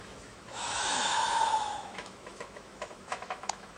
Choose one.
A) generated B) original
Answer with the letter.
A